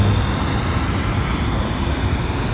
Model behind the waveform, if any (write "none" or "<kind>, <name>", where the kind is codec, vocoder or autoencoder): none